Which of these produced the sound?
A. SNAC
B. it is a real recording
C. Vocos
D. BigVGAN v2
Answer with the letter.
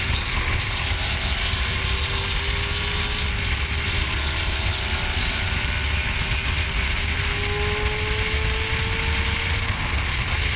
B